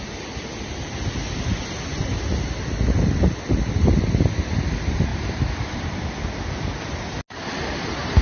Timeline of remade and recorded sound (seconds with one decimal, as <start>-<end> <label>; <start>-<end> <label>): 0.0-5.1 recorded; 5.1-6.0 remade; 6.0-8.2 recorded

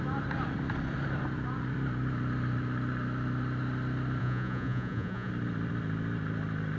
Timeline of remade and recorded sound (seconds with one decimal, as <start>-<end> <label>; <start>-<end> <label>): 0.0-4.2 recorded; 4.2-5.3 remade; 5.3-6.8 recorded

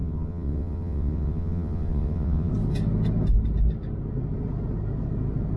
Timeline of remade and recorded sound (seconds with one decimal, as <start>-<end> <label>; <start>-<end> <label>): 0.0-2.5 remade; 2.5-5.6 recorded

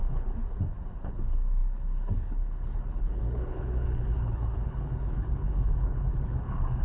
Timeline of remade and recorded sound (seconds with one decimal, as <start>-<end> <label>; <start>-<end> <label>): 0.0-6.8 remade

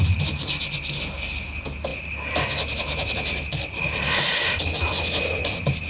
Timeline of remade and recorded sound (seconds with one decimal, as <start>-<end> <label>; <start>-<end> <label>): 0.0-5.9 recorded

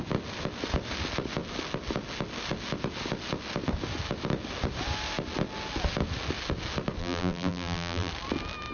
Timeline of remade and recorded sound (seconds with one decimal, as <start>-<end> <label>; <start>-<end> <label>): 0.0-7.0 recorded; 7.0-8.1 remade; 8.1-8.7 recorded

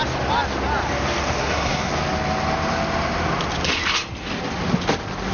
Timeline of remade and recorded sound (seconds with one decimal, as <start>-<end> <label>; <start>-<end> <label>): 0.0-1.4 recorded; 1.4-1.9 remade; 1.9-5.3 recorded

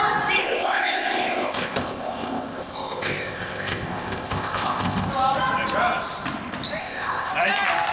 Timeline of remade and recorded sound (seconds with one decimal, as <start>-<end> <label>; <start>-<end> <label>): 0.0-0.4 recorded; 0.4-5.1 remade; 5.1-6.8 recorded; 6.8-7.3 remade; 7.3-7.9 recorded